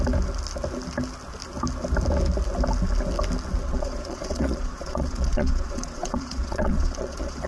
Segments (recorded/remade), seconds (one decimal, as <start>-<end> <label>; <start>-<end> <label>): 0.0-3.6 recorded; 3.6-7.5 remade